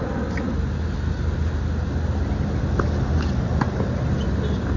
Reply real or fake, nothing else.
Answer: real